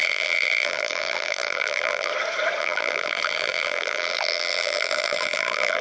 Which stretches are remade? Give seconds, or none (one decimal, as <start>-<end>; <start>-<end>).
0.0-2.1; 2.6-5.8